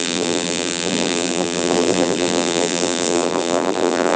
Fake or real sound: fake